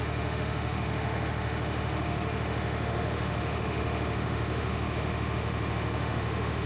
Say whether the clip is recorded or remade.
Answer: remade